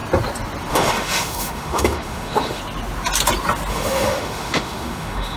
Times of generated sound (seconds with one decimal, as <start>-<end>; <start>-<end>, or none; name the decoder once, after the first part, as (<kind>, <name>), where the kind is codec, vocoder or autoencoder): 0.7-2.6 (autoencoder, DAC-VAE); 3.7-5.4